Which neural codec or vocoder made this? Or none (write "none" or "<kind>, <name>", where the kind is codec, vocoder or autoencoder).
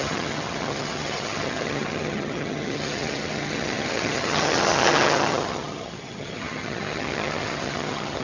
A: vocoder, HiFi-GAN